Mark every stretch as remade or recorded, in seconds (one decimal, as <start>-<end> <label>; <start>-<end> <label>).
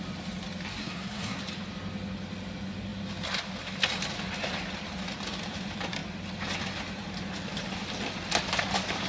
0.0-0.7 recorded; 0.7-1.4 remade; 1.4-9.1 recorded